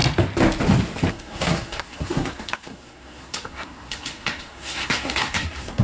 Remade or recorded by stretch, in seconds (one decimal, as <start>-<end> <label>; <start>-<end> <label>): 0.0-1.1 recorded; 1.1-5.8 remade